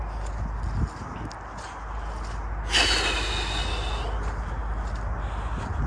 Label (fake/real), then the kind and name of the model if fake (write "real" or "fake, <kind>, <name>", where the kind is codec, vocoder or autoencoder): real